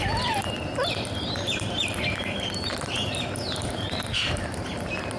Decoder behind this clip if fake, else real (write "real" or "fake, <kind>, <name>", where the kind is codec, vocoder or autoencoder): fake, vocoder, BigVGAN v2